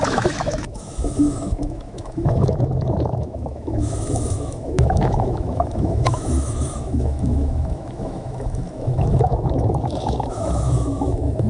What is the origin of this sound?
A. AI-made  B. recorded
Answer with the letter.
A